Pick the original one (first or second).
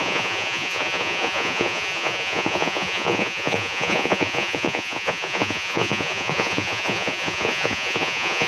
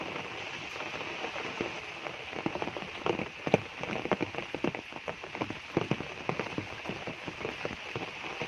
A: second